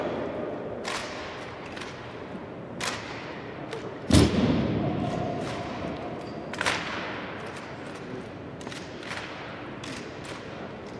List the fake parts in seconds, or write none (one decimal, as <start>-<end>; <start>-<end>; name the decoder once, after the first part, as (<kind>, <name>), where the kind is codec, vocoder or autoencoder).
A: 1.0-1.6 (vocoder, BigVGAN v2)